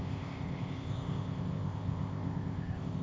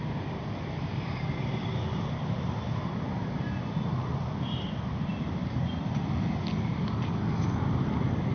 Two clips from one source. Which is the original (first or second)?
second